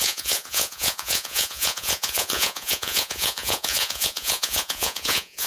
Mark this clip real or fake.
fake